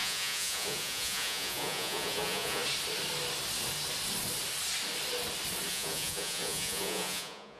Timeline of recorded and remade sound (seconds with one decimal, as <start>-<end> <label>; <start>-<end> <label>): 0.0-2.6 remade; 2.6-5.7 recorded; 5.7-7.6 remade